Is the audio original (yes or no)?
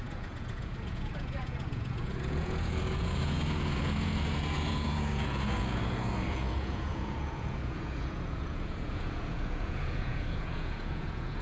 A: no